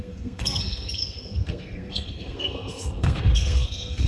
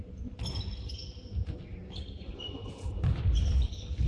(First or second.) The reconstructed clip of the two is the first